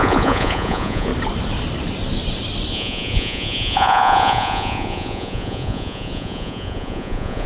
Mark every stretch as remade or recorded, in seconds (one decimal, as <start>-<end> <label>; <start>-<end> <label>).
0.0-1.1 remade; 1.1-2.7 recorded; 2.7-7.5 remade